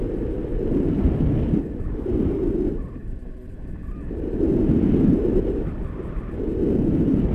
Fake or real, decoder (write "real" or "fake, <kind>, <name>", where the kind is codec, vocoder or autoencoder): real